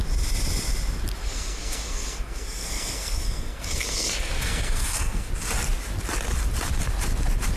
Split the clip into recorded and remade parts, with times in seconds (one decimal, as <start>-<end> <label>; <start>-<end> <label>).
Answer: 0.0-1.2 recorded; 1.2-5.3 remade; 5.3-7.6 recorded